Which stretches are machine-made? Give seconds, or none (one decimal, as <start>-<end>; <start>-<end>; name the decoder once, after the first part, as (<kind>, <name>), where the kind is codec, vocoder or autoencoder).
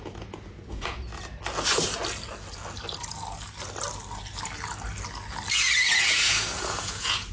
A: 0.0-1.1 (vocoder, Vocos); 5.5-7.3